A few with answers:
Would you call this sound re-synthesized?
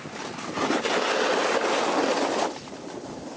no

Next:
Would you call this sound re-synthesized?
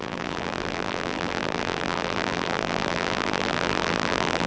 yes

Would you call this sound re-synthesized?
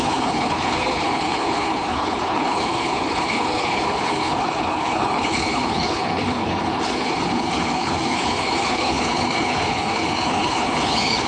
yes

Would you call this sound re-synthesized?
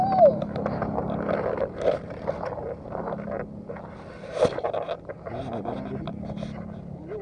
no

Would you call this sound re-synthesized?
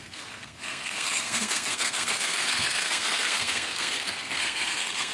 yes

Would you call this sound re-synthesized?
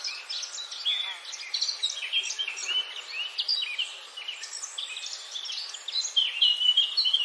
no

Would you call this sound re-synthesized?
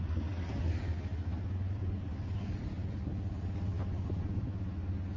no